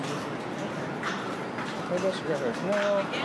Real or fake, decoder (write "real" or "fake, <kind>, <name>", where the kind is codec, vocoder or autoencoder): real